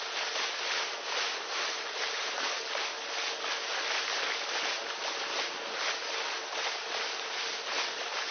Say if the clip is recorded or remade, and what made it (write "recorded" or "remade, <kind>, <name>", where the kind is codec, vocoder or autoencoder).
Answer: recorded